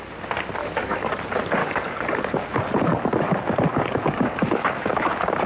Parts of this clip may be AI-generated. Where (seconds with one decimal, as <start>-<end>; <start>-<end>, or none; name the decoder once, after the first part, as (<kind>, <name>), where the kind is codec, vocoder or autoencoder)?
0.6-1.2 (codec, DAC); 1.6-2.3; 3.7-4.9